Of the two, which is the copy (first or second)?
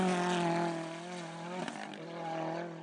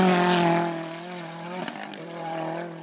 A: second